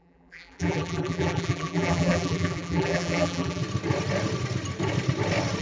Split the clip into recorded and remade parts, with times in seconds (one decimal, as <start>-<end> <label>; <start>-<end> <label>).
0.0-3.6 remade; 3.6-5.6 recorded